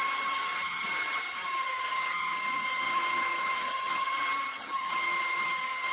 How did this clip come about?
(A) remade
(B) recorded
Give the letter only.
A